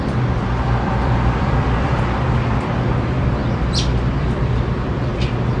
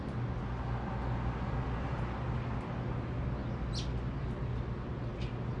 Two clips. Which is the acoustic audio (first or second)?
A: second